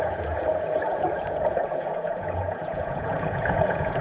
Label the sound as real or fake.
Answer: fake